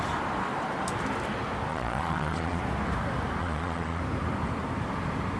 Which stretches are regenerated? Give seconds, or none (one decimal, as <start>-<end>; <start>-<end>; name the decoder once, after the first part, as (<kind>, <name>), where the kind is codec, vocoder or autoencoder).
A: 1.7-2.6 (vocoder, Vocos); 3.4-4.0